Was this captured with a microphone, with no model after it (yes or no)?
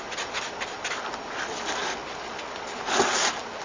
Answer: yes